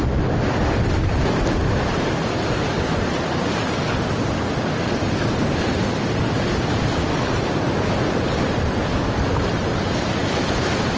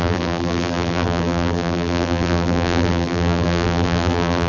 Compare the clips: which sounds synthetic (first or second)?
second